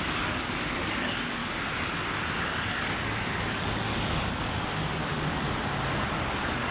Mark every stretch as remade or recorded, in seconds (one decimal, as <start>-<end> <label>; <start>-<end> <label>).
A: 0.0-1.4 remade; 1.4-2.4 recorded; 2.4-5.1 remade; 5.1-6.3 recorded; 6.3-6.7 remade